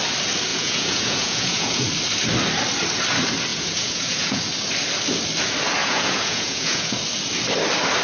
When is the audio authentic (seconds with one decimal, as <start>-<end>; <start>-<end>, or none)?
0.0-0.5; 1.8-3.5; 4.4-5.8; 7.0-8.0